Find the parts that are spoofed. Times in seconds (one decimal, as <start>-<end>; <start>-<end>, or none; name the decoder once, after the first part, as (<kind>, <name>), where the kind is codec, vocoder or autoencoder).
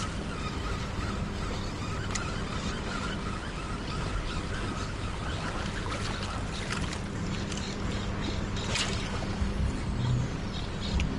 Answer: none